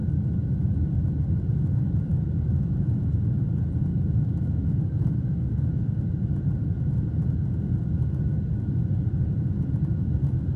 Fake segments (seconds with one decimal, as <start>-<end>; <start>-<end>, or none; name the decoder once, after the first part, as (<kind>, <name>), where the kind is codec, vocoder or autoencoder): 2.1-3.2 (autoencoder, DAC-VAE); 3.9-5.6